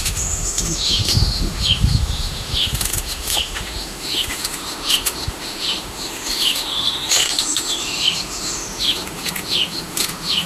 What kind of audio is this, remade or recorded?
remade